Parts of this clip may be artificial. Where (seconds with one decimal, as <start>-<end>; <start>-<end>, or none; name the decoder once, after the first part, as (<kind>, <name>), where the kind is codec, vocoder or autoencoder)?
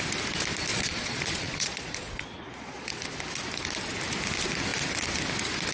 0.7-2.9 (vocoder, Vocos)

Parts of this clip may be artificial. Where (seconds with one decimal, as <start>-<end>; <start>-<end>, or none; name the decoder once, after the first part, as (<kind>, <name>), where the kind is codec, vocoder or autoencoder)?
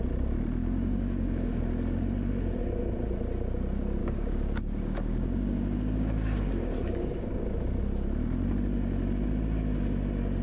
0.6-1.6 (codec, DAC); 4.0-7.8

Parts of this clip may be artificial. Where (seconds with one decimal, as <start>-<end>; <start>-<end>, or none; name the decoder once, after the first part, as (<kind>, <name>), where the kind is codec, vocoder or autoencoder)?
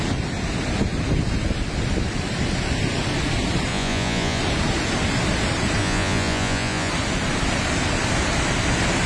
3.7-4.4 (vocoder, Vocos); 5.8-6.9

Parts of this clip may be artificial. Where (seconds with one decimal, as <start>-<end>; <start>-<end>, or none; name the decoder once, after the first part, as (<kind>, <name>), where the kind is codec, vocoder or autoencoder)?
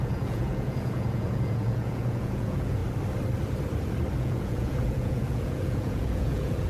0.0-2.8 (vocoder, Vocos); 4.2-6.7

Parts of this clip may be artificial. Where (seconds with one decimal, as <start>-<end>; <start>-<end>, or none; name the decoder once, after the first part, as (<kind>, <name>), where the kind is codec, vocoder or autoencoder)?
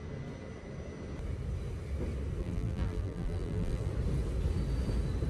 2.4-3.9 (vocoder, BigVGAN v2)